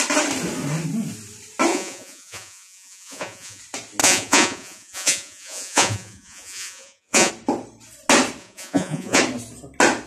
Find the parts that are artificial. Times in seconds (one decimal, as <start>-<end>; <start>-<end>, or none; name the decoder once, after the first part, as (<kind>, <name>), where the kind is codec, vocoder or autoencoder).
1.7-3.6 (vocoder, Vocos); 4.0-7.3; 8.4-9.2